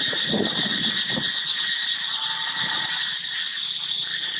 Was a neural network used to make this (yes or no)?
no